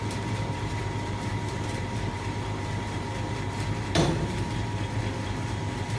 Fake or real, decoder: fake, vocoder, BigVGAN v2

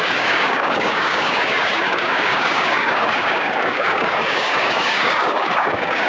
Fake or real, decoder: fake, codec, DAC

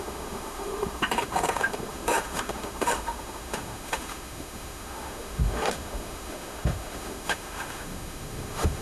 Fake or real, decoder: fake, autoencoder, DAC-VAE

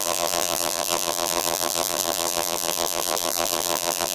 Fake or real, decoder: fake, vocoder, BigVGAN v2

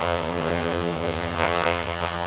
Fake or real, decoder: fake, vocoder, HiFi-GAN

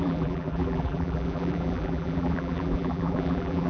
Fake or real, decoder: fake, vocoder, BigVGAN v2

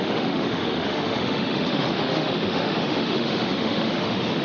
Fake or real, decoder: fake, autoencoder, DAC-VAE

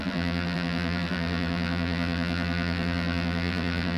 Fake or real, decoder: fake, vocoder, BigVGAN v2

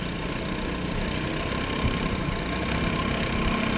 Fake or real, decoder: real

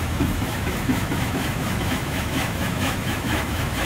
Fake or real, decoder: fake, autoencoder, DAC-VAE